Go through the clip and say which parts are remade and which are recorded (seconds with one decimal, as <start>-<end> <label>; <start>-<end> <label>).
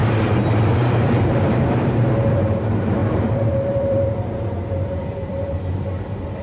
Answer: 0.0-6.4 remade